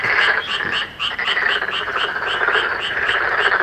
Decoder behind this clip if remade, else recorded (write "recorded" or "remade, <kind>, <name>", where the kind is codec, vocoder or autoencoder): remade, vocoder, BigVGAN v2